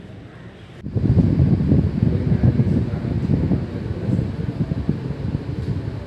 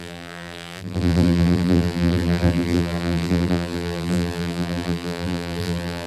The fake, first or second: second